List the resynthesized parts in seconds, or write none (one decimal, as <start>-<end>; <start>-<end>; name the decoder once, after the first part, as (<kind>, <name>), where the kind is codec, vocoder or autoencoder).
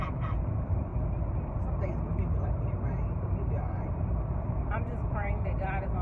0.0-0.9 (vocoder, BigVGAN v2); 4.4-6.0